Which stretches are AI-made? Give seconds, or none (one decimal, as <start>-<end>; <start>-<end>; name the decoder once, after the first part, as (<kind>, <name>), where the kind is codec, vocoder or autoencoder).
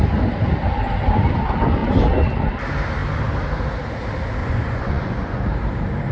4.4-5.4 (vocoder, Vocos)